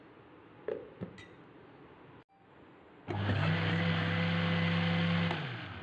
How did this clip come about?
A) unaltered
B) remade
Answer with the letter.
A